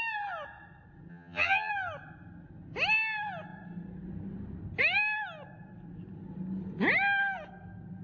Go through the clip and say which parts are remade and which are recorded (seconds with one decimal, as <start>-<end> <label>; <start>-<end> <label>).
0.0-1.1 recorded; 1.1-1.7 remade; 1.7-8.0 recorded